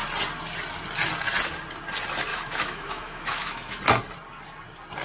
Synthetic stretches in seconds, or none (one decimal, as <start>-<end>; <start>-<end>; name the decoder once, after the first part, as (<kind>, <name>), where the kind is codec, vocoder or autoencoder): 2.3-3.8 (autoencoder, DAC-VAE)